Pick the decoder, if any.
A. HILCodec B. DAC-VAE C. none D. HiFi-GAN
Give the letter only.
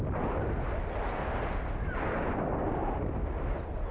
C